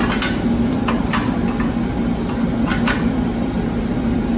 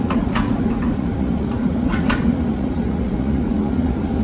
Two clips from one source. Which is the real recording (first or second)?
first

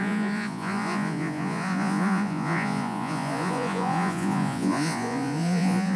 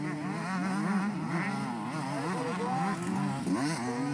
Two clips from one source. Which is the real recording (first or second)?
second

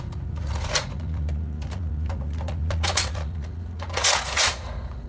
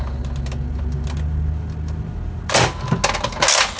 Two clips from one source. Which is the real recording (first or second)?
second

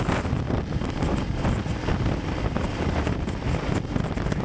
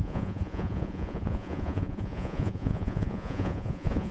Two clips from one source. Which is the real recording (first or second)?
first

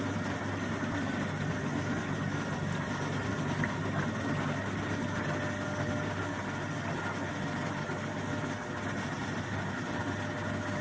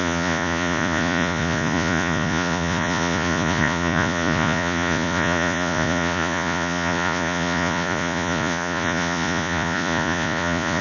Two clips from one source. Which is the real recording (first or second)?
first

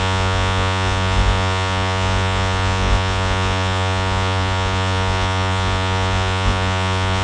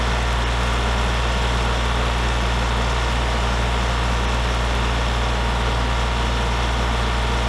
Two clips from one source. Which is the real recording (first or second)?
second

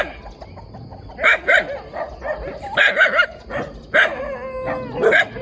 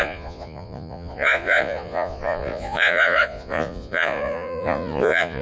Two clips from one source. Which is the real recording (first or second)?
first